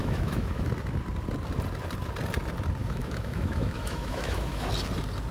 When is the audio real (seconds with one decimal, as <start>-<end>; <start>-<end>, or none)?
0.7-2.8; 4.7-5.3